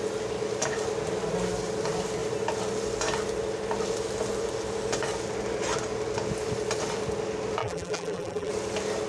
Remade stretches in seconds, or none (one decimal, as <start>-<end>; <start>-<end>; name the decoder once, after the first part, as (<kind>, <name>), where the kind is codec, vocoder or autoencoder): 7.6-8.5 (vocoder, BigVGAN v2)